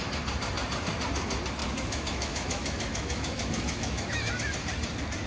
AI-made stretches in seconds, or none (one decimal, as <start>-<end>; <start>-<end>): 1.6-4.3